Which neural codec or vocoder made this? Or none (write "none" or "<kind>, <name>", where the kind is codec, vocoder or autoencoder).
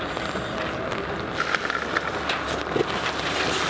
none